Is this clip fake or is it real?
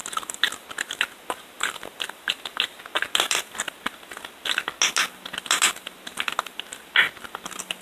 real